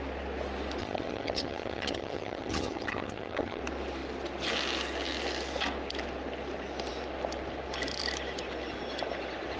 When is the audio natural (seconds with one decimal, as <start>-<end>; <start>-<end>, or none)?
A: 0.0-0.8; 3.6-9.6